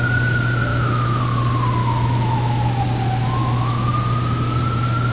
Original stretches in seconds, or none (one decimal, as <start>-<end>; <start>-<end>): 0.0-0.7; 1.2-1.8; 2.8-3.4; 3.9-5.1